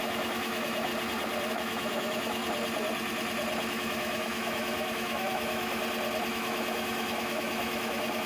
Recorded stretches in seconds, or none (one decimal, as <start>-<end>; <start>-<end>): 0.9-1.5; 2.4-3.7; 5.8-6.3